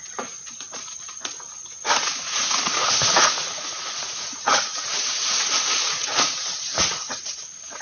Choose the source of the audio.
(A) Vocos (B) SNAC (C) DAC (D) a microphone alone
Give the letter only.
A